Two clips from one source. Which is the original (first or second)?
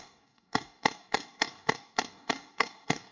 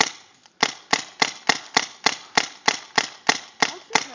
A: second